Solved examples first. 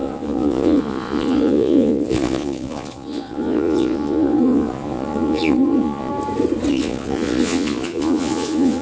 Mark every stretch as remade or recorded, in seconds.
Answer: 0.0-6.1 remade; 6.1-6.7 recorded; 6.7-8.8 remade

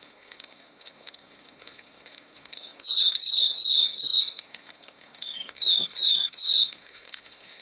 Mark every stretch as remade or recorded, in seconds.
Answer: 0.0-7.6 remade

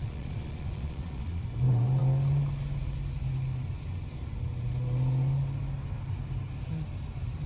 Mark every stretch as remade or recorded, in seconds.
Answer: 0.0-1.4 remade; 1.4-7.5 recorded

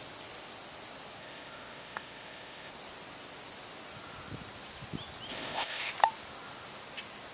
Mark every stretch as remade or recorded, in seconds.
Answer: 0.0-1.2 recorded; 1.2-2.7 remade; 2.7-5.3 recorded; 5.3-5.9 remade; 5.9-7.3 recorded